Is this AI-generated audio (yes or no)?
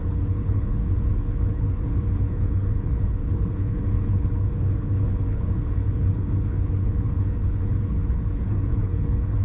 yes